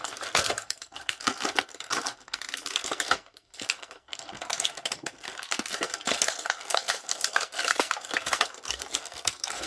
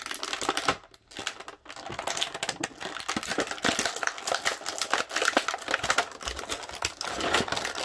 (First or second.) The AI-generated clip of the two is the first